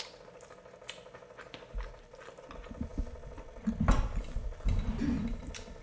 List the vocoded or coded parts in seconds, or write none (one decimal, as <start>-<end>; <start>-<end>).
none

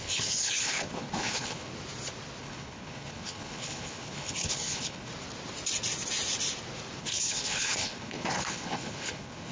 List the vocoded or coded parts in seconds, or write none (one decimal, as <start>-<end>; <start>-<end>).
0.0-1.7; 2.4-5.1; 7.0-9.5